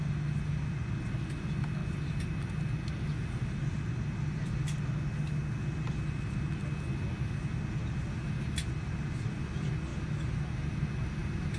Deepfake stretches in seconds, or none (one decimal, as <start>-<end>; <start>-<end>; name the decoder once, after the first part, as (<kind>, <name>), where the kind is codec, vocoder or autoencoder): none